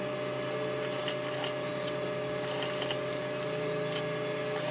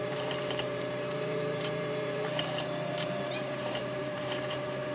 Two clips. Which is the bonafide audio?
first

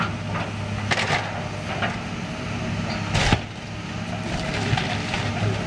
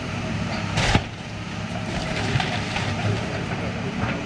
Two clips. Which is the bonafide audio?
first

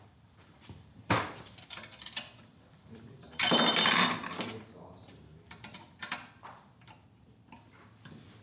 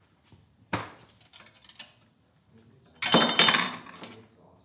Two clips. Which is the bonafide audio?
second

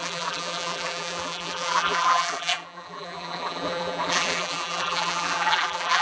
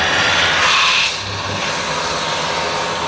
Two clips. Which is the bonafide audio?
second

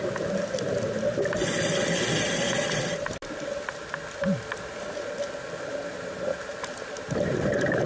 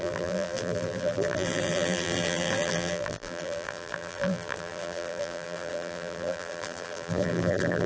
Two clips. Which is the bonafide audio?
first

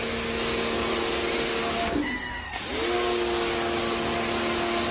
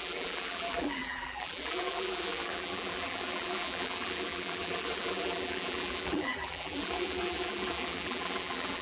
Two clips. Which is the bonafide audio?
first